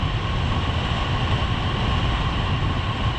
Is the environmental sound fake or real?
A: real